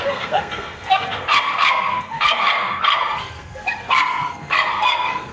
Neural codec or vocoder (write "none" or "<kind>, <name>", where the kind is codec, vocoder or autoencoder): codec, SNAC